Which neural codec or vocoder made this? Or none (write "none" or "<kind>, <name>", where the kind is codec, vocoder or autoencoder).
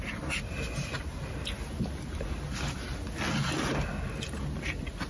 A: none